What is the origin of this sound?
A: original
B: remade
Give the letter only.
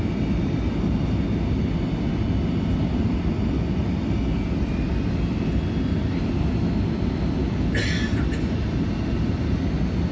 A